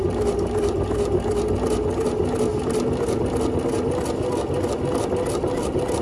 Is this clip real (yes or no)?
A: yes